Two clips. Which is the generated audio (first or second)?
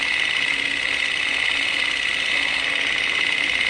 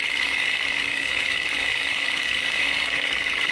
second